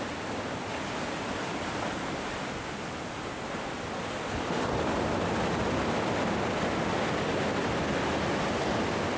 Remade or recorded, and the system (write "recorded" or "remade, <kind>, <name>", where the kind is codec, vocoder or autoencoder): recorded